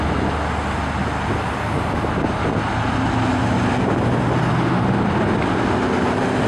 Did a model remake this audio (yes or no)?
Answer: no